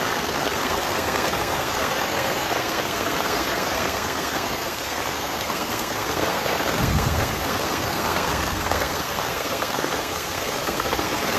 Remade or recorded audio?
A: remade